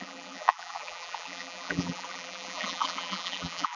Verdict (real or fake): fake